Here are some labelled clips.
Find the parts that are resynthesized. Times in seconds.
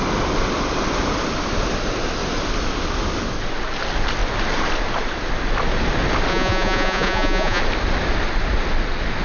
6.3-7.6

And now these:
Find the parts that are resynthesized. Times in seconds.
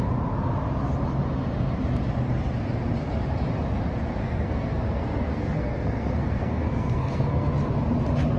4.2-7.5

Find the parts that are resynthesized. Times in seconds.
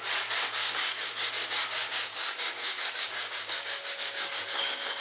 0.6-1.3; 1.8-5.0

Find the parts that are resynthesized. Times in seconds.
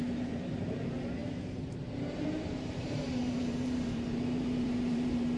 0.0-5.4